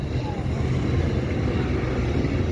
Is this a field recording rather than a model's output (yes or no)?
yes